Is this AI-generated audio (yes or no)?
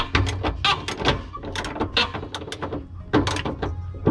no